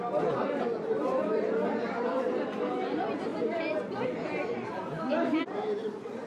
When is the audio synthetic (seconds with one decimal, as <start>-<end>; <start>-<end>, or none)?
0.0-6.3